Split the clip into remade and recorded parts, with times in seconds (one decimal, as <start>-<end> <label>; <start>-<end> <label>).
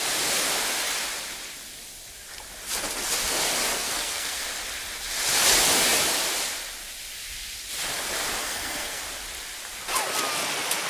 0.0-3.7 recorded; 3.7-4.5 remade; 4.5-8.4 recorded; 8.4-9.0 remade; 9.0-10.9 recorded